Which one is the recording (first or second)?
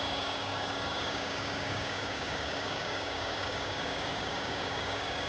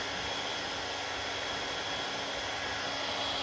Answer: second